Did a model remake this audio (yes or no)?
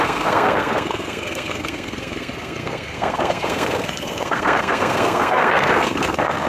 yes